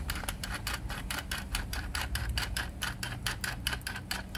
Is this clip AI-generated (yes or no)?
yes